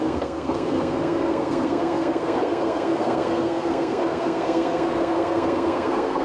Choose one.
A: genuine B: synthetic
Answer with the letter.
B